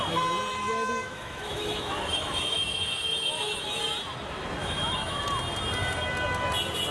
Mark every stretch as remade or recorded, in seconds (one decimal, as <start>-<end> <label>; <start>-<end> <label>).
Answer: 0.0-0.5 recorded; 0.5-3.8 remade; 3.8-4.6 recorded; 4.6-5.2 remade; 5.2-6.9 recorded